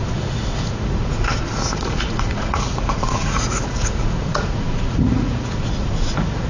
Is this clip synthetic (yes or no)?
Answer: yes